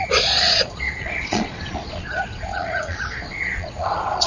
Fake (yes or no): yes